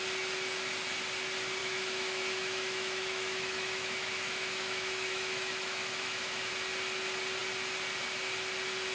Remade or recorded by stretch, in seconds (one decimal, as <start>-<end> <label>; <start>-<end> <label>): 0.0-1.6 recorded; 1.6-6.5 remade; 6.5-8.9 recorded